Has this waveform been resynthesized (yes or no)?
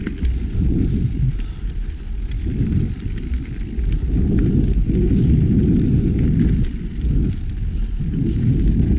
no